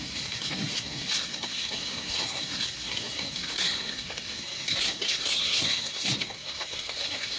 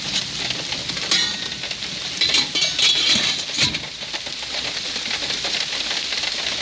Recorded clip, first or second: second